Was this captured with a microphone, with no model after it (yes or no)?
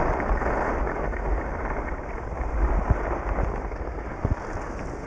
yes